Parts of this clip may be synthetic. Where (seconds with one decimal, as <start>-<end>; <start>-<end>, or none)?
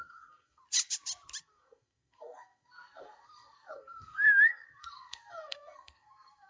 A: 0.0-0.6; 1.4-6.5